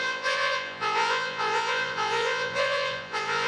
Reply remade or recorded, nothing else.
remade